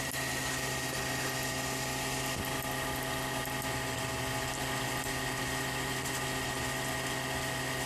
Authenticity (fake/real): real